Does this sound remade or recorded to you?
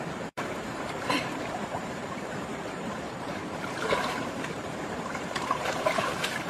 remade